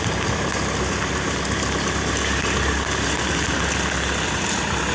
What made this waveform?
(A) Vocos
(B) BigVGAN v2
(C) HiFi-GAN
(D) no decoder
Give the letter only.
D